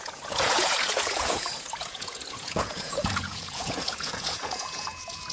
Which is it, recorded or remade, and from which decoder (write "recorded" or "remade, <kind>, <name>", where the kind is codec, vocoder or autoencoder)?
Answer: remade, vocoder, Vocos